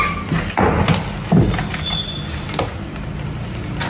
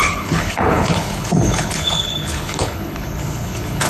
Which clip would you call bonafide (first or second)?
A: first